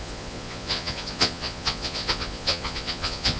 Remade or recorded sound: remade